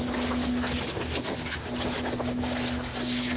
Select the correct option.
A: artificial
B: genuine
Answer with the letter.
B